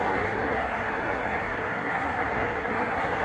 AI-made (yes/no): yes